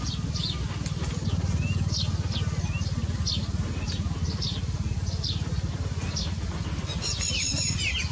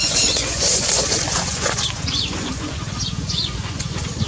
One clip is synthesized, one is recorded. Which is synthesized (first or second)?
second